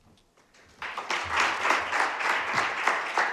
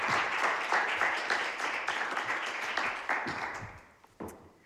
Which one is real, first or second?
first